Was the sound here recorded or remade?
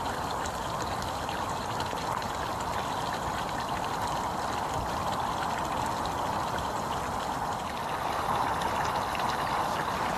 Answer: recorded